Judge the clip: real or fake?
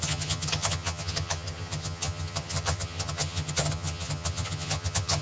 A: fake